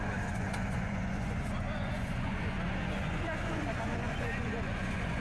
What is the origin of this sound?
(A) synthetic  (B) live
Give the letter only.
A